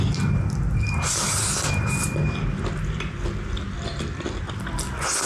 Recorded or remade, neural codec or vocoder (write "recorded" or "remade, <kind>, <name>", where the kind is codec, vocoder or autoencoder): recorded